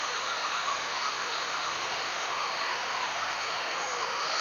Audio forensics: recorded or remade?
remade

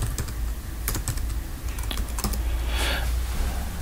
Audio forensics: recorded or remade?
recorded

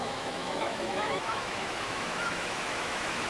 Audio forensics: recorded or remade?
remade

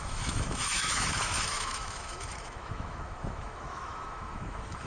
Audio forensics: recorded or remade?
remade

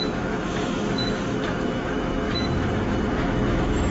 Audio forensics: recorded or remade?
remade